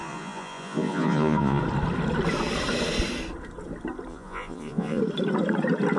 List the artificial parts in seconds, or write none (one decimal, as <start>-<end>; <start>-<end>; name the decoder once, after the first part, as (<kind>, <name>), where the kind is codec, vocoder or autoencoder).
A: 0.0-1.6 (vocoder, Vocos); 4.1-5.0